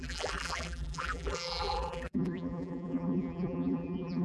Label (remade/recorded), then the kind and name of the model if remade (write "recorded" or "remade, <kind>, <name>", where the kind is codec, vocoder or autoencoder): remade, vocoder, BigVGAN v2